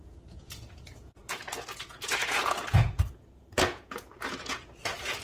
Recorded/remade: remade